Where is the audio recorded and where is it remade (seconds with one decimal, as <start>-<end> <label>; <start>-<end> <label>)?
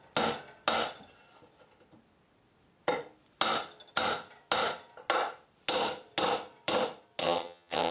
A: 0.0-7.2 recorded; 7.2-7.9 remade